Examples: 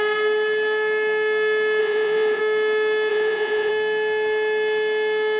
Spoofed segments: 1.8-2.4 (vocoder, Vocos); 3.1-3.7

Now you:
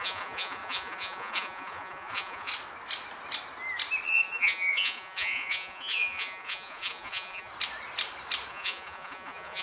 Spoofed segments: 0.0-2.5 (vocoder, Vocos); 4.1-7.5; 8.5-9.6

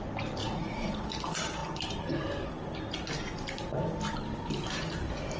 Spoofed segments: 0.4-0.9 (vocoder, Vocos)